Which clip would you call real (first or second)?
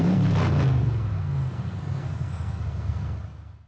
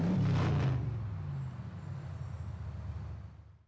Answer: second